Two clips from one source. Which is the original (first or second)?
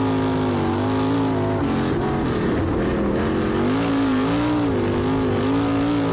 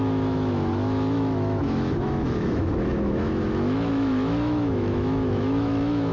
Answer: first